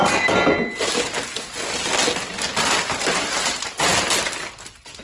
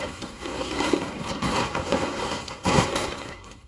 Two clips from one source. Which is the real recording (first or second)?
first